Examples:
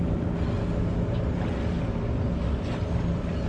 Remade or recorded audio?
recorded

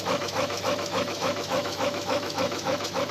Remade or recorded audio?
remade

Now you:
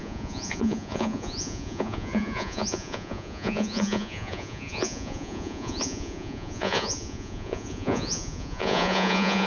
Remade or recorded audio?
remade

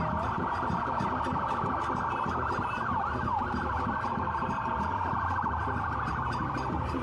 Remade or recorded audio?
remade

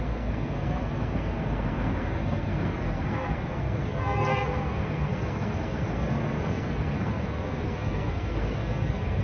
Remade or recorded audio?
remade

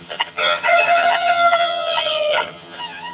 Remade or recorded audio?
remade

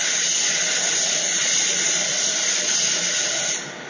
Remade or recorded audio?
remade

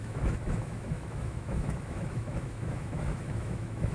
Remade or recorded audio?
remade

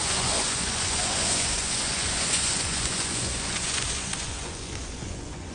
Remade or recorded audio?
remade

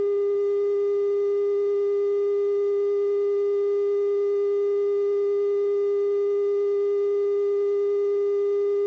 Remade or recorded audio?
recorded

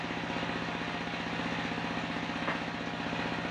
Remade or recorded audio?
recorded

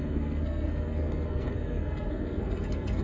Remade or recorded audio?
remade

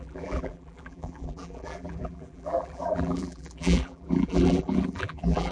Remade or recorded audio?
remade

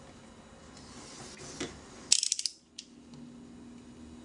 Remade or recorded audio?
recorded